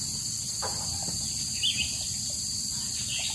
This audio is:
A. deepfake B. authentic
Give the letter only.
B